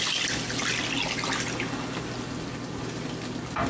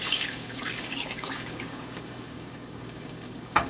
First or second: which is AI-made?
second